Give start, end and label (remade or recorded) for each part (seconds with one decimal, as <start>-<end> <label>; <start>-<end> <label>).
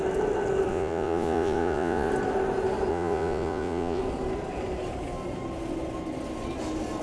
0.0-0.7 recorded; 0.7-2.1 remade; 2.1-2.9 recorded; 2.9-4.0 remade; 4.0-7.0 recorded